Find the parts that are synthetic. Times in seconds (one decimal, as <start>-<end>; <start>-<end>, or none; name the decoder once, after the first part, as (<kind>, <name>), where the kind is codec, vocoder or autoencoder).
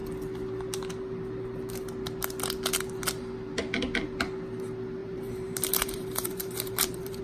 5.0-7.2 (vocoder, BigVGAN v2)